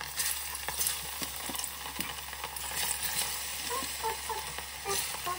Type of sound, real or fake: real